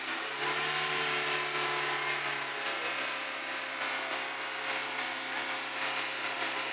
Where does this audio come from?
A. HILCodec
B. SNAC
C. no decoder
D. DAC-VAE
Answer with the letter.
C